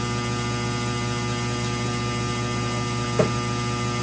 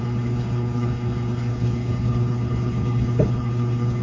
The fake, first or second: second